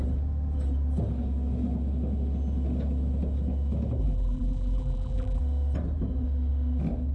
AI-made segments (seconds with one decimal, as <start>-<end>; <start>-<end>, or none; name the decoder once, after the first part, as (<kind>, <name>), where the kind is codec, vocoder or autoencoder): 4.0-5.4 (vocoder, BigVGAN v2)